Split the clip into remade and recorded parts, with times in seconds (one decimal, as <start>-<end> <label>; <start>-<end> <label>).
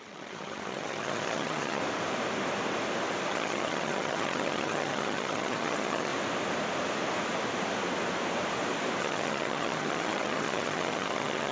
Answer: 0.0-1.8 remade; 1.8-3.3 recorded; 3.3-6.1 remade; 6.1-9.0 recorded; 9.0-11.5 remade